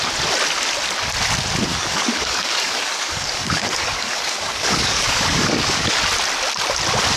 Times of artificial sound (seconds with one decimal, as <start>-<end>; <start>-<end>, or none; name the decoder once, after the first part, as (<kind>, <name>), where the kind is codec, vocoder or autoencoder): 1.7-6.0 (codec, DAC)